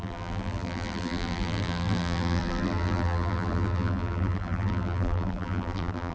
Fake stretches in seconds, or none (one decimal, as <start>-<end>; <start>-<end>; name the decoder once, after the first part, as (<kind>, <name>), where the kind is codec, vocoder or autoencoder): 0.0-6.1 (vocoder, BigVGAN v2)